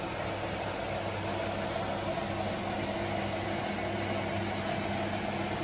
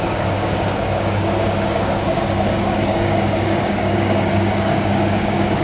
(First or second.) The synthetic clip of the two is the second